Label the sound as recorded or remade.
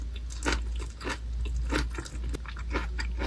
recorded